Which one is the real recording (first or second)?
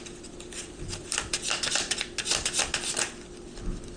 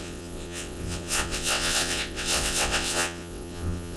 first